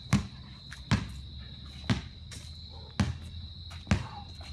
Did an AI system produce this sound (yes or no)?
no